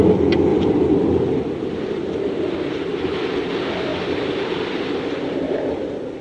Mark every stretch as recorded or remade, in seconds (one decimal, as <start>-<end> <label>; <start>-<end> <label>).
0.0-0.5 recorded; 0.5-3.5 remade; 3.5-3.9 recorded; 3.9-6.2 remade